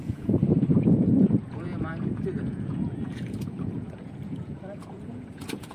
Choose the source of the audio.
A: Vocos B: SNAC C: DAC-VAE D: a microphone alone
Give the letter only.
A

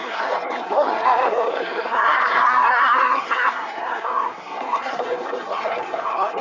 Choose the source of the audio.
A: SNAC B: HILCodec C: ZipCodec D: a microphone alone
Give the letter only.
A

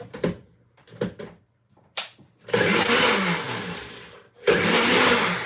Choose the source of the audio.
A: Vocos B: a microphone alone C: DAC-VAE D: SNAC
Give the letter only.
B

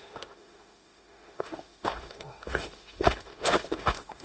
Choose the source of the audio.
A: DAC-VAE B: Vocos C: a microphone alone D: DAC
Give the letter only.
A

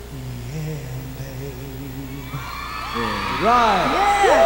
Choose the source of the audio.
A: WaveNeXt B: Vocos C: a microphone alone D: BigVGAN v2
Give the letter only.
C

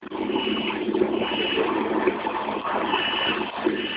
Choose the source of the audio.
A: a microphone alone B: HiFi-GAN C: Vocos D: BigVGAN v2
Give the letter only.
D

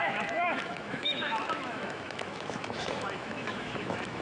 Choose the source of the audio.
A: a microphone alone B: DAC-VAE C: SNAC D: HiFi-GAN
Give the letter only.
B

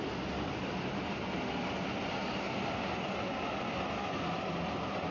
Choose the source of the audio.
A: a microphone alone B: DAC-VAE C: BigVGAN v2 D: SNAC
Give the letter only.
C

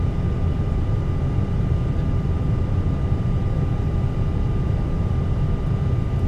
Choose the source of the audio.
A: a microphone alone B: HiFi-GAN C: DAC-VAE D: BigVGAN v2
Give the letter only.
D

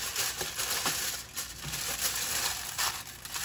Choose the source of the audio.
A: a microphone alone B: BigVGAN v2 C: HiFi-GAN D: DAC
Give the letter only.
A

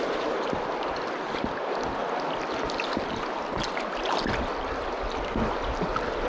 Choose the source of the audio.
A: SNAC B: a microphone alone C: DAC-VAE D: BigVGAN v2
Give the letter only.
B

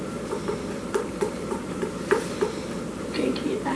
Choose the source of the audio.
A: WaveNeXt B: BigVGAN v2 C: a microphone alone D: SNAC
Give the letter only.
B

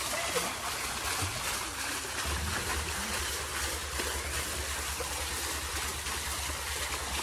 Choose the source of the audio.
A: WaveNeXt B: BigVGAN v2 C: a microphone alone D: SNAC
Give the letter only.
C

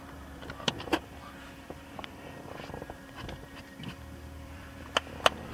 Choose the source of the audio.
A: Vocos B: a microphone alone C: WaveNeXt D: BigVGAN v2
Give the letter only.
D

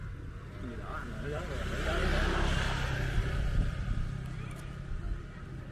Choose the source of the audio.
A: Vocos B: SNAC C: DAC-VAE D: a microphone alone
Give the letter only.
D